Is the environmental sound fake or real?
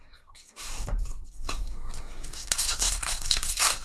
fake